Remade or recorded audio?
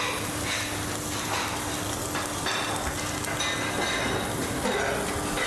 recorded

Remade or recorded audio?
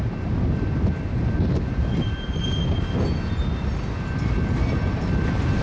recorded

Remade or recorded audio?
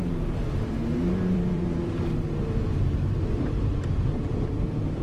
remade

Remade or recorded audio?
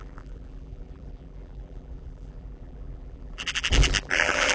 remade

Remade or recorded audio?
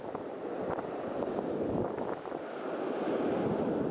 recorded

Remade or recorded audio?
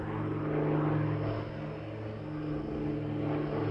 recorded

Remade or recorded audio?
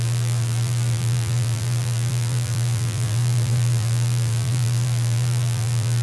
remade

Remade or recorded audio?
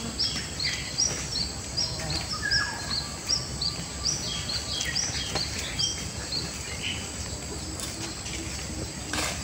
remade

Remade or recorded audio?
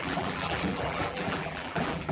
remade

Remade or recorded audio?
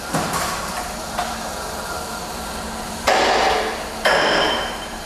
remade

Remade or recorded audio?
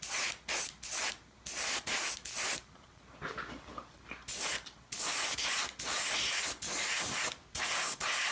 recorded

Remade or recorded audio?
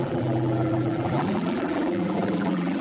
remade